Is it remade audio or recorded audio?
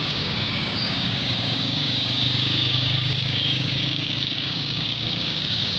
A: remade